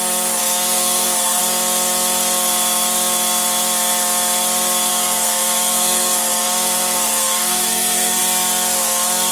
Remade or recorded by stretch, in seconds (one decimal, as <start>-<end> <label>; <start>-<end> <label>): 0.0-0.4 recorded; 0.4-1.4 remade; 1.4-4.9 recorded; 4.9-8.2 remade; 8.2-9.3 recorded